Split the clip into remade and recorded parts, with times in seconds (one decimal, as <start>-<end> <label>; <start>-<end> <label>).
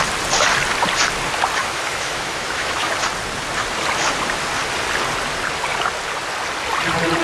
0.0-1.6 recorded; 1.6-2.9 remade; 2.9-7.2 recorded